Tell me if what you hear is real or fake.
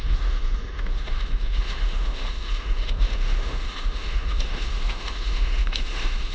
fake